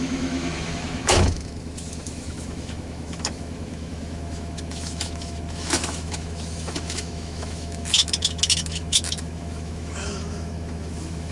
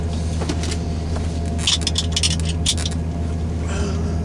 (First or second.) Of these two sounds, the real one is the second